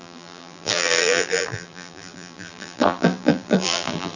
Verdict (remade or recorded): remade